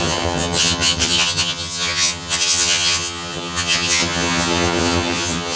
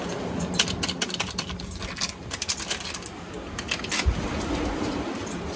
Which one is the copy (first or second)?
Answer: first